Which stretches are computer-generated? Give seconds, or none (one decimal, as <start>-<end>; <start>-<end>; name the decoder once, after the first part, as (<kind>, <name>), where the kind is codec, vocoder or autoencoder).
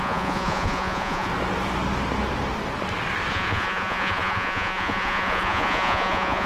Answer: 0.0-1.3 (vocoder, Vocos); 3.3-6.5